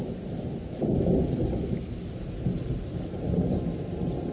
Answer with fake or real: real